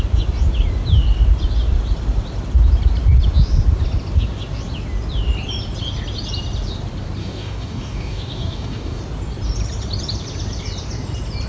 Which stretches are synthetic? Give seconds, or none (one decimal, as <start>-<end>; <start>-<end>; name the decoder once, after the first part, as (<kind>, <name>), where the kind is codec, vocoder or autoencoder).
7.2-9.0 (codec, DAC)